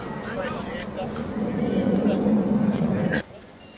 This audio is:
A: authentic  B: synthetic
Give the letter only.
B